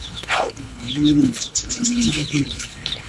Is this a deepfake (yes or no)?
yes